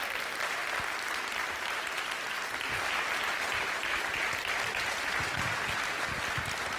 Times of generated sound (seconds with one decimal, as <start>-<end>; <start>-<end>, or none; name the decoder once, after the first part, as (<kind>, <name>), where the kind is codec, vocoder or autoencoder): none